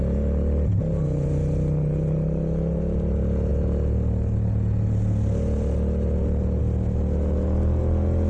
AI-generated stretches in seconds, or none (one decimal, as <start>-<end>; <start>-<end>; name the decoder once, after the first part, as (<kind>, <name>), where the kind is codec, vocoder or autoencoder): none